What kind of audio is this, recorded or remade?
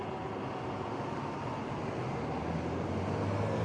recorded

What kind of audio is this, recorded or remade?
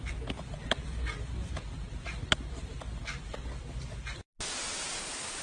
recorded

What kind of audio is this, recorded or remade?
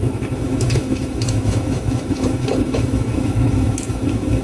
remade